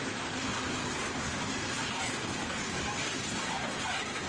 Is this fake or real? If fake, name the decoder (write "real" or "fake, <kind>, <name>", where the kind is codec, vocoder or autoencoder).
real